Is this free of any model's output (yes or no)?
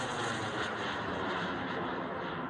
no